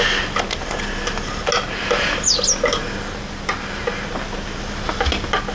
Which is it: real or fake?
real